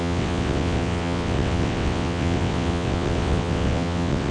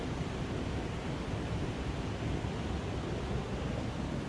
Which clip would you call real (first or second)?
second